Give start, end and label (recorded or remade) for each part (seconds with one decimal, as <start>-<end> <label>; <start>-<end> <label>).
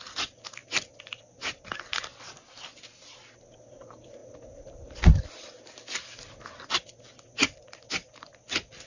0.0-8.9 recorded